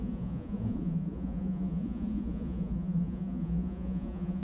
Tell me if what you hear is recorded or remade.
remade